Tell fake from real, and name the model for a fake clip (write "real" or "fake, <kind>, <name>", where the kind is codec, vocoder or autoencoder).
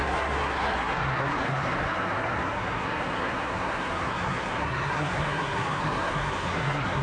fake, codec, SNAC